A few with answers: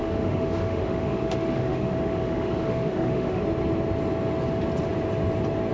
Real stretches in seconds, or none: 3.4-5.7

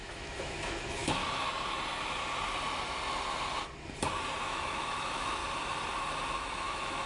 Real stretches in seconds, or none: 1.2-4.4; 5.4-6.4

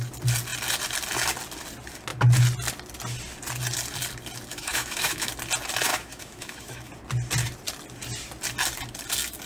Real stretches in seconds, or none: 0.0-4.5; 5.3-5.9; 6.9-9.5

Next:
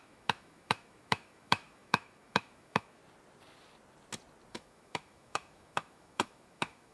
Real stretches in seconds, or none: 3.0-4.5

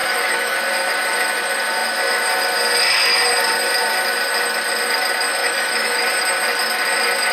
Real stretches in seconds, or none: 0.6-5.4; 6.0-7.3

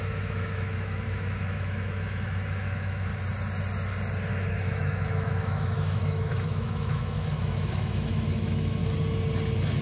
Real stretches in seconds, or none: 3.1-4.3; 8.8-9.8

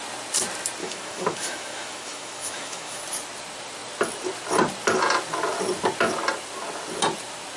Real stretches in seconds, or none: 0.0-0.8; 3.0-7.6